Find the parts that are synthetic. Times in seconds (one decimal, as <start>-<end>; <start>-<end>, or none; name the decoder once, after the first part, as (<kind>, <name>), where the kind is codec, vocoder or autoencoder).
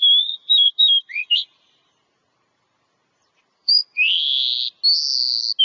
0.4-3.8 (vocoder, BigVGAN v2)